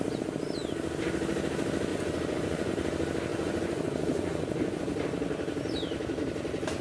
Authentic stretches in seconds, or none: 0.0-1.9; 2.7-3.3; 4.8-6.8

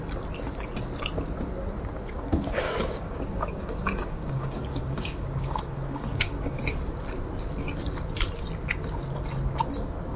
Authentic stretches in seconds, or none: 0.0-2.1; 6.6-10.2

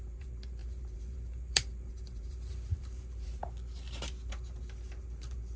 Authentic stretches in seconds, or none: 3.4-4.3

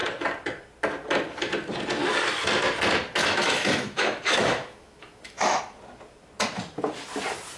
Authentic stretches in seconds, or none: 0.0-3.2; 5.6-7.6